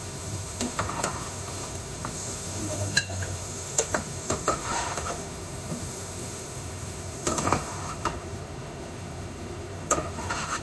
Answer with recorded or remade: remade